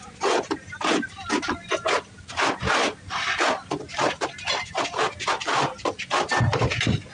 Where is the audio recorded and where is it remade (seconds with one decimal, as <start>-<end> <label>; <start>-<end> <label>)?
0.0-7.1 recorded